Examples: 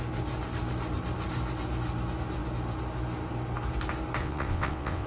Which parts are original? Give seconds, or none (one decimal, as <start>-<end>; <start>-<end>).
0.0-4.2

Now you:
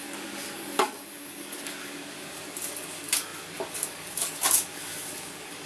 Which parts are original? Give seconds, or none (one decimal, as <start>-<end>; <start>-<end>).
none

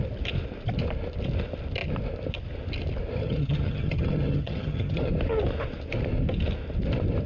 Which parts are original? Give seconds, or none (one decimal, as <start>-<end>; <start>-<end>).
0.0-3.2; 5.1-7.3